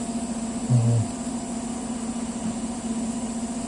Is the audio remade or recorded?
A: recorded